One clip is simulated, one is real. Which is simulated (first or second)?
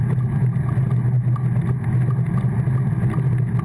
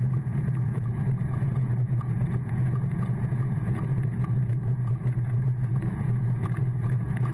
second